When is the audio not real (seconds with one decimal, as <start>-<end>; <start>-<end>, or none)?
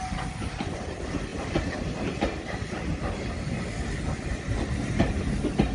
none